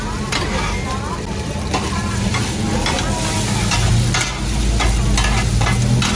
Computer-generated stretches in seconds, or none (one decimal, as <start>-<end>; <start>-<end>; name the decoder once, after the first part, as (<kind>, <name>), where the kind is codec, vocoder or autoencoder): none